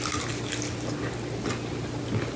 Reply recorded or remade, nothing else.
recorded